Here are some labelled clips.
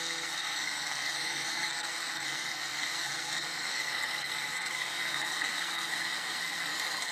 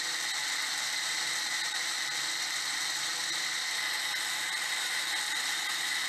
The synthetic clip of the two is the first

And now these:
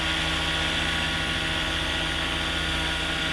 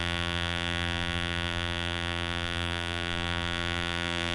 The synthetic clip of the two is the second